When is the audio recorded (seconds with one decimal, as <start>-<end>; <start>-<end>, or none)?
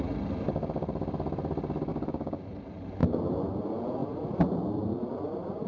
0.0-1.9; 2.4-5.7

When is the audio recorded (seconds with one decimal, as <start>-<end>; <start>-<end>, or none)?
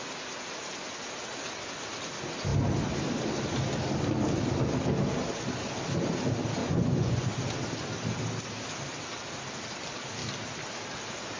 0.0-6.6; 7.3-11.4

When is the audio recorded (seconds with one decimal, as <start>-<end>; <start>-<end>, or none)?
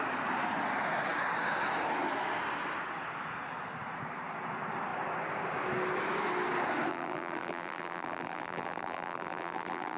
0.0-6.9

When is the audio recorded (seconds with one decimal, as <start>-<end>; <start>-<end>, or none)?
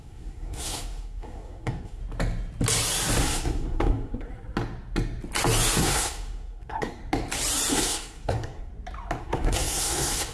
2.0-3.2; 4.3-5.8; 7.0-7.7; 8.7-9.2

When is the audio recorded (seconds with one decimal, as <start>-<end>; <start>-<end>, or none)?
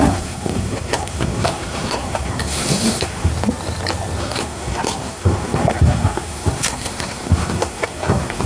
3.3-4.2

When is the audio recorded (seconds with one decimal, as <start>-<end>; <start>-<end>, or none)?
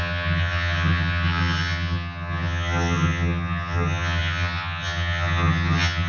none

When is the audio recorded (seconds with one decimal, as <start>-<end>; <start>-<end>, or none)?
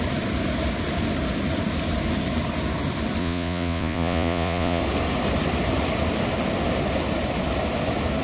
0.0-3.2; 4.8-8.2